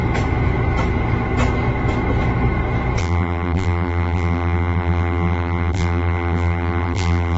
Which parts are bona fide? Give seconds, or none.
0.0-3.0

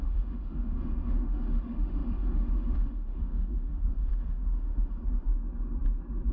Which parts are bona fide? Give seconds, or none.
5.3-6.3

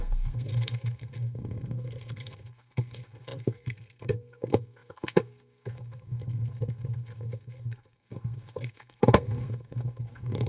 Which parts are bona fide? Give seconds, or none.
none

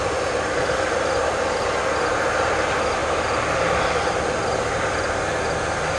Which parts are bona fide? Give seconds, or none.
0.0-6.0

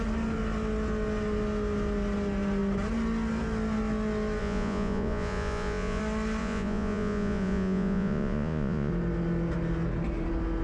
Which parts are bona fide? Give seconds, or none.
0.0-4.4; 6.0-6.4; 8.9-10.6

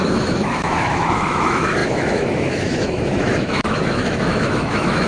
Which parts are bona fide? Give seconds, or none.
none